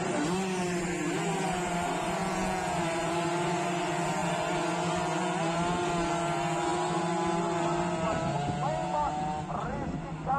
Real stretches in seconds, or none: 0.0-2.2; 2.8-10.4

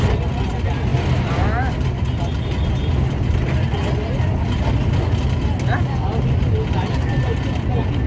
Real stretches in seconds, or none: 0.0-8.1

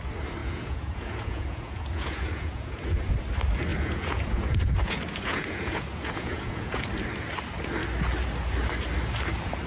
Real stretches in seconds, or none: 0.0-0.4; 3.1-3.7; 6.8-9.7

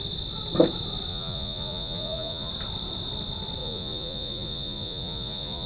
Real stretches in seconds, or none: 0.0-1.1; 2.5-3.6